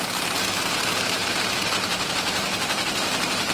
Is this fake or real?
fake